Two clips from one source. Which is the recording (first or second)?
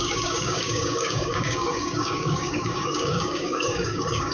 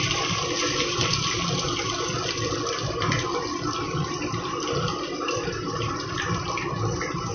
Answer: second